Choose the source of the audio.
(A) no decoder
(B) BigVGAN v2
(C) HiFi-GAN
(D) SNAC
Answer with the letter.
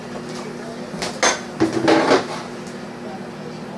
A